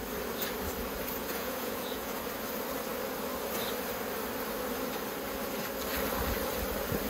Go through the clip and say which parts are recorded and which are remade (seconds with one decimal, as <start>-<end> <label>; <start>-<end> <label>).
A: 0.0-1.2 recorded; 1.2-2.2 remade; 2.2-7.1 recorded